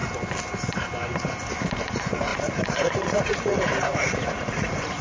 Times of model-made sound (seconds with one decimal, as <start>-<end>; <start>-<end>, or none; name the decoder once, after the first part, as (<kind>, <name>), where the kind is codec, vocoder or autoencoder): 1.9-5.0 (vocoder, Vocos)